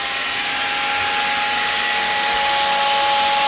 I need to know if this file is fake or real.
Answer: real